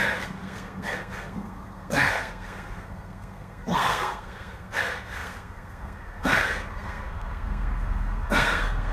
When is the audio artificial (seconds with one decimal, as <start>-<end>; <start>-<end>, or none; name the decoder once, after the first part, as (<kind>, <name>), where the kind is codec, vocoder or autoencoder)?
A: 0.0-8.9 (codec, SNAC)